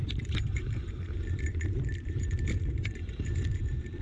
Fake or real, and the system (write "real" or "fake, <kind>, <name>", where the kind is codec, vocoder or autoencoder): fake, vocoder, BigVGAN v2